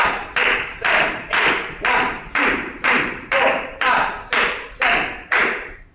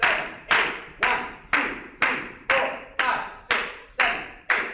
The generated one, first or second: first